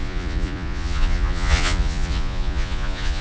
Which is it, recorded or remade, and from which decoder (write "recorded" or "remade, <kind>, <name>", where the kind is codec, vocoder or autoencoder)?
remade, vocoder, Vocos